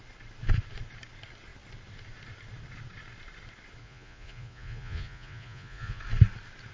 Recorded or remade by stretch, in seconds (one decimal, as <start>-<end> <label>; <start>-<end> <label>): 0.0-3.8 recorded; 3.8-6.0 remade; 6.0-6.7 recorded